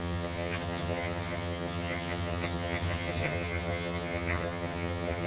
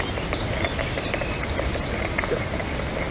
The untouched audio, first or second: second